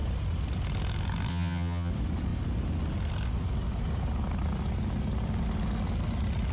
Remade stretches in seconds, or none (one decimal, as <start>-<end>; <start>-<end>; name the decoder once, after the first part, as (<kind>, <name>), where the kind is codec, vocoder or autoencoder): 1.3-1.9 (vocoder, HiFi-GAN)